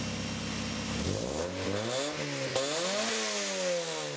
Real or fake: real